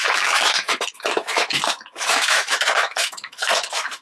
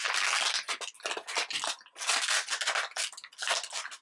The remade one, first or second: first